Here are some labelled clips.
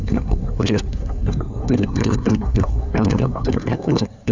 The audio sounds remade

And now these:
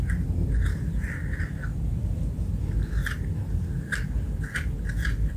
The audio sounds recorded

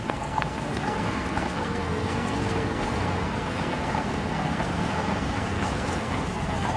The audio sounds remade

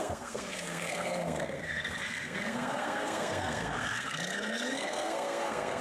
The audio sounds remade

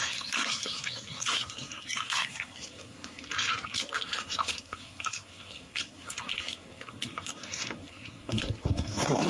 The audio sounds remade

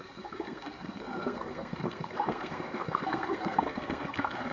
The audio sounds remade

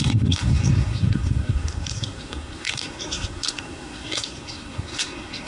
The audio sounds remade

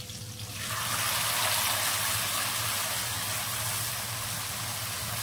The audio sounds recorded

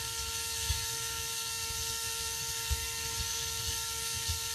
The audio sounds remade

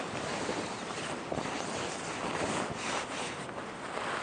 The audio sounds recorded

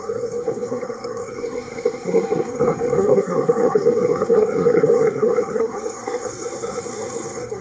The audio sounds remade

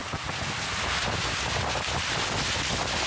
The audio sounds recorded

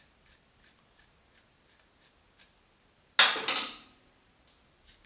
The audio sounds recorded